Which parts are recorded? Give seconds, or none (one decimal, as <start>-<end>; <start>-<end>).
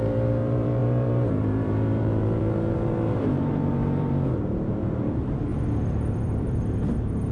5.5-6.1